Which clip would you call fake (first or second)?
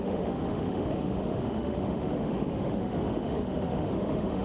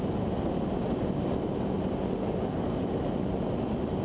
first